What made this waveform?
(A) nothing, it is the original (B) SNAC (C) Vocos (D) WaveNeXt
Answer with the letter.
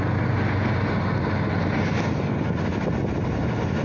A